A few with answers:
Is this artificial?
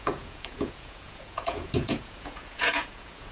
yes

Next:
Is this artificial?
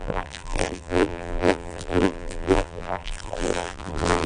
yes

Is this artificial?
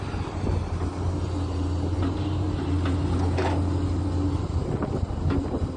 no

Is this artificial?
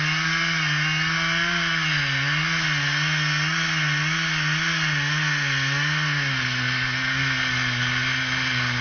no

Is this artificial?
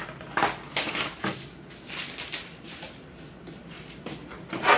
no